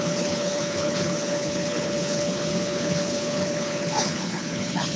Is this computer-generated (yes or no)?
yes